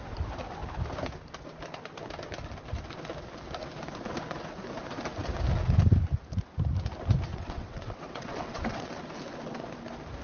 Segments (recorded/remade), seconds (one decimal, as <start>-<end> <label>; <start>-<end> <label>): 0.0-7.3 recorded; 7.3-8.9 remade; 8.9-10.2 recorded